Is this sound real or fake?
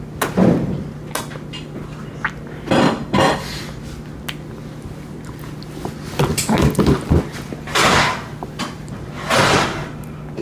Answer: real